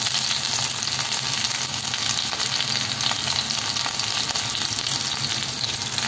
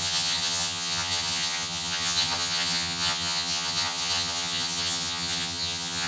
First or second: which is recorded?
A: first